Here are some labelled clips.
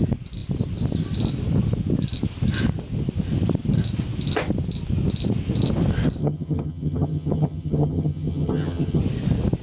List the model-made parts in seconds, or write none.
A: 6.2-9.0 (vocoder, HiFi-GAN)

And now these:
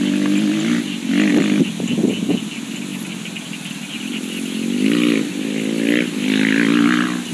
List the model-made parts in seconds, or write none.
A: none

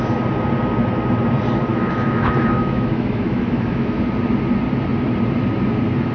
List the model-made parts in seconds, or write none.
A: 1.7-4.0 (autoencoder, DAC-VAE)

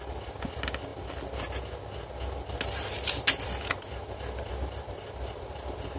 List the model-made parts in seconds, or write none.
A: none

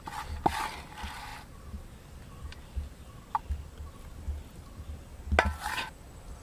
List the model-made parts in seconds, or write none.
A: none

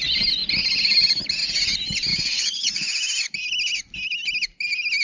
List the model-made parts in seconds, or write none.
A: 2.1-2.7 (vocoder, WaveNeXt)